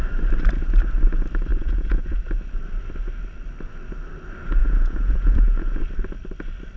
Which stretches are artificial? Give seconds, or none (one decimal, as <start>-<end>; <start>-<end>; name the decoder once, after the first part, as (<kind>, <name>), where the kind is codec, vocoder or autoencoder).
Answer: 1.5-2.2 (vocoder, Vocos); 4.6-5.8